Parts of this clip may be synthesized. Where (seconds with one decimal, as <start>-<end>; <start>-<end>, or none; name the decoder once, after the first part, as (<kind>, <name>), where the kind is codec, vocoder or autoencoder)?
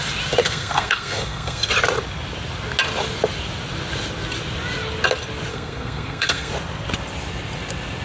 0.4-1.7 (codec, SNAC); 5.5-6.5